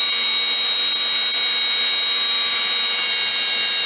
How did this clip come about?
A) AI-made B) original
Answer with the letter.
B